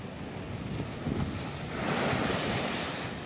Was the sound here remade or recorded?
recorded